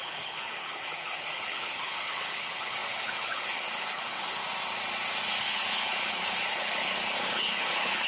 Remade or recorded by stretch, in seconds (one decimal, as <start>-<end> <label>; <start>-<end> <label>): 0.0-4.4 remade; 4.4-5.4 recorded; 5.4-8.1 remade